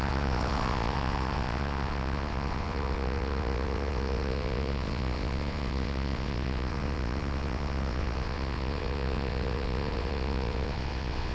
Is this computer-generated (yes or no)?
yes